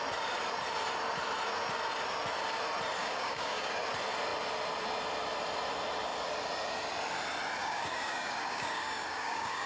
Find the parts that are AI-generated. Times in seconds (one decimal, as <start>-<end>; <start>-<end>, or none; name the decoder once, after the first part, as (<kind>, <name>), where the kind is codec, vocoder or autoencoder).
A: 3.0-3.7 (codec, DAC); 7.6-9.7